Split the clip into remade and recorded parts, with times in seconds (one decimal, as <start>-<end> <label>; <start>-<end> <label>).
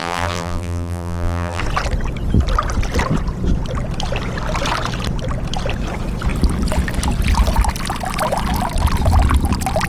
0.0-1.6 remade; 1.6-9.9 recorded